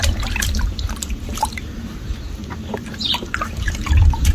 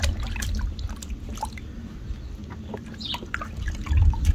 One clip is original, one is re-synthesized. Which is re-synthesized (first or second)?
first